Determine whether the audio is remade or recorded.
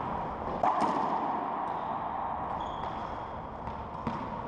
recorded